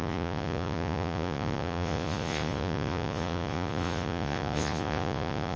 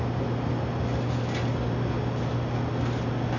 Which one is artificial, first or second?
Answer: first